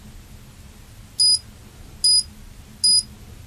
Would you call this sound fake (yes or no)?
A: no